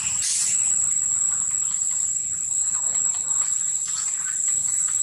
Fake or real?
real